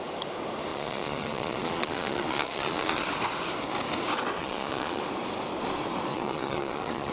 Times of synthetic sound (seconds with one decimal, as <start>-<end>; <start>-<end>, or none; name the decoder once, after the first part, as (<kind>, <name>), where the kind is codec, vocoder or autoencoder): 0.7-3.0 (vocoder, Vocos); 4.4-5.0; 6.1-7.1